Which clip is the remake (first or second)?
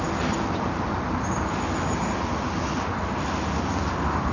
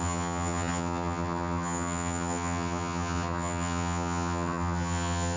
second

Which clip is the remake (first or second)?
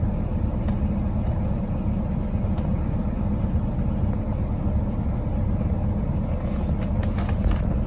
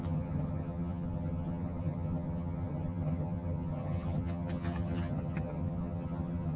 second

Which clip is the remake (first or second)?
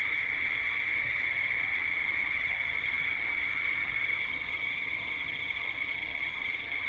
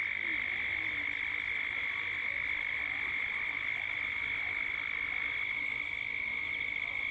first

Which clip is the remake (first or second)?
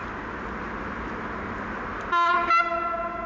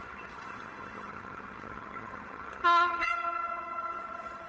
second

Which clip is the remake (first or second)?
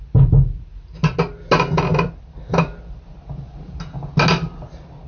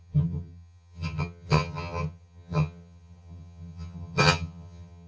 second